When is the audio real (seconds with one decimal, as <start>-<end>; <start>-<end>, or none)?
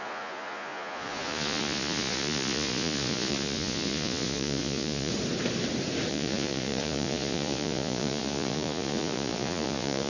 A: 5.1-6.1